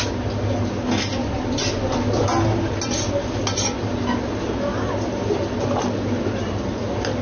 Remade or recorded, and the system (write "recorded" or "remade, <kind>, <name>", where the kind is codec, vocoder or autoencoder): recorded